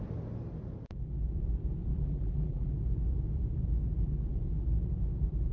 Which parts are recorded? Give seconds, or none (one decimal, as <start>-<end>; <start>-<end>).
0.0-1.9; 2.7-5.5